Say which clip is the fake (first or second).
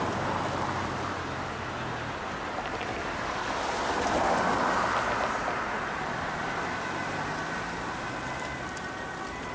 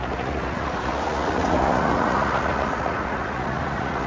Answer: second